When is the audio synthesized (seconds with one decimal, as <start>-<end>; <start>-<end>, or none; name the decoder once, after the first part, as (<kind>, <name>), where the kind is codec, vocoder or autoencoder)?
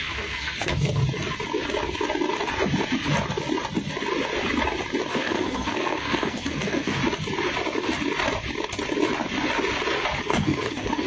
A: 0.0-1.0 (codec, SNAC); 5.1-7.0; 10.2-11.1